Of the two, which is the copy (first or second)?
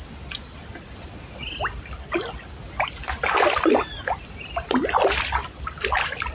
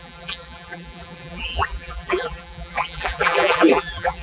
second